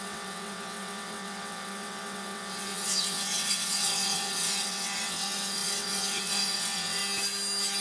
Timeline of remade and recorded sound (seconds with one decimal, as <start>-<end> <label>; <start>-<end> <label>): 0.0-7.0 remade; 7.0-7.8 recorded